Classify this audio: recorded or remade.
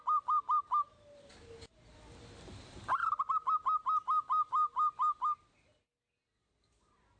recorded